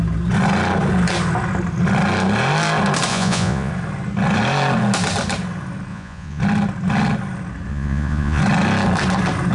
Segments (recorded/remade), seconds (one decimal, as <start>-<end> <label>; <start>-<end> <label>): 0.0-3.1 recorded; 3.1-3.7 remade; 3.7-5.9 recorded; 5.9-6.4 remade; 6.4-7.7 recorded; 7.7-8.4 remade; 8.4-9.5 recorded